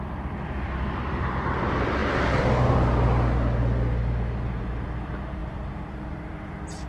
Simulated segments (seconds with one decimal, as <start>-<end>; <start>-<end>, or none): 0.0-2.0; 4.6-6.9